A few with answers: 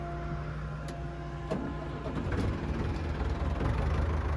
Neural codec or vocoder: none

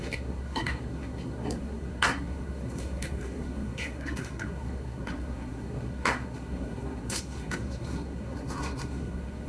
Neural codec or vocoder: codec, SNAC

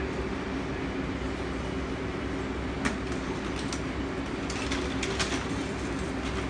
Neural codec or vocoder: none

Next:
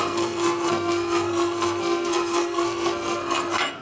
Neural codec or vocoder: codec, SNAC